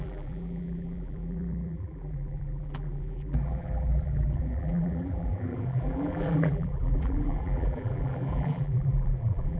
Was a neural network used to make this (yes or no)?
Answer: yes